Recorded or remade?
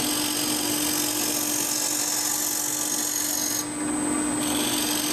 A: recorded